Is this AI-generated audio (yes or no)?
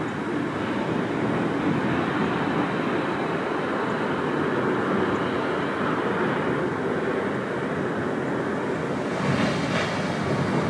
no